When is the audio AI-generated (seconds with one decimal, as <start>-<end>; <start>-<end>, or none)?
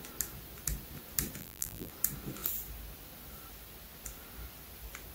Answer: 1.4-1.9